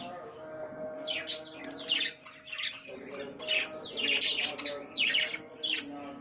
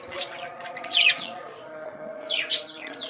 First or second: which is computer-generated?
second